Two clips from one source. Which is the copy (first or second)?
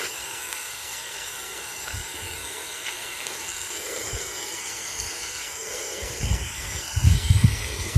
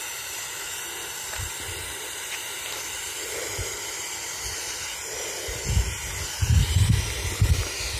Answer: first